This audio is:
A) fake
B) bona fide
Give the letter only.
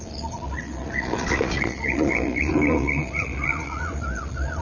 A